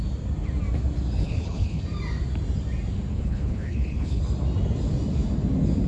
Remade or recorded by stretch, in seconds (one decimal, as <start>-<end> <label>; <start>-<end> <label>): 0.0-1.2 recorded; 1.2-1.8 remade; 1.8-3.1 recorded; 3.1-4.2 remade; 4.2-5.9 recorded